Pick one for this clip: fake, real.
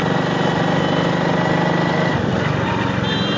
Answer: real